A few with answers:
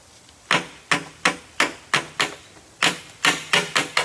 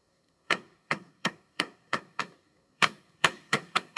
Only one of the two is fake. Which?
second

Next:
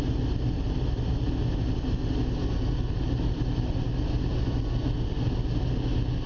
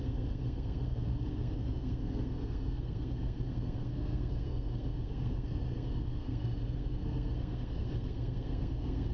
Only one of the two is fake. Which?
second